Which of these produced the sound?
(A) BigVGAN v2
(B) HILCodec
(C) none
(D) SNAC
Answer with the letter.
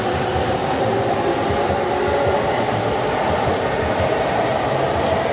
C